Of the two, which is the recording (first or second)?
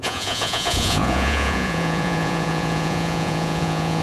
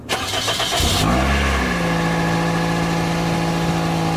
second